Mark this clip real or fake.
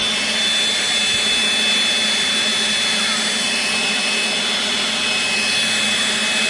real